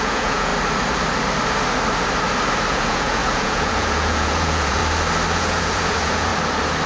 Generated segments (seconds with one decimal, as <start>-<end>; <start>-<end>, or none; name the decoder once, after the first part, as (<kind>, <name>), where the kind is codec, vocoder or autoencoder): 0.0-0.5 (vocoder, Vocos); 2.7-4.8; 5.3-6.3